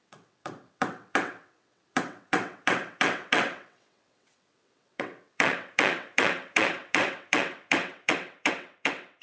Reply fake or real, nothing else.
fake